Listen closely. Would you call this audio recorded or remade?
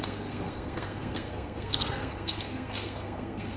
remade